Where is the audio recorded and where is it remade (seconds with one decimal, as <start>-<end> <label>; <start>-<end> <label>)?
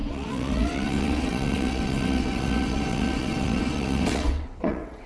0.0-5.1 remade